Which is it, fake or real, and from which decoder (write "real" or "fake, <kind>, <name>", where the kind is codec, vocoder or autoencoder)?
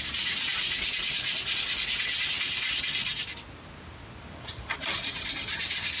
real